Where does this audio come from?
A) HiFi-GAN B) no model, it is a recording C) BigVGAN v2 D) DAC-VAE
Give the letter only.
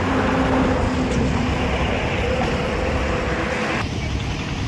B